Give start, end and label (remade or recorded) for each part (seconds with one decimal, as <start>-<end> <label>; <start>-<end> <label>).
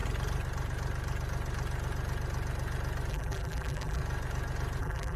0.0-3.1 recorded; 3.1-4.0 remade; 4.0-4.8 recorded; 4.8-5.2 remade